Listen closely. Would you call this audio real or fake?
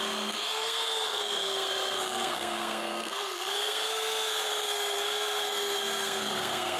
fake